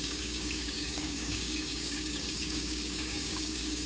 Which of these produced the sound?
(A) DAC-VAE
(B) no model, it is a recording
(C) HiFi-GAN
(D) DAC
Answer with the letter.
D